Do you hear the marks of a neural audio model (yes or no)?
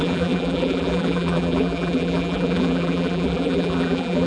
yes